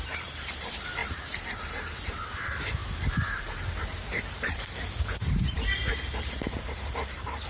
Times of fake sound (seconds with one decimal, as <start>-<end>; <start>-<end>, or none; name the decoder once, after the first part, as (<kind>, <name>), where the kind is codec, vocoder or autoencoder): 0.0-7.5 (vocoder, BigVGAN v2)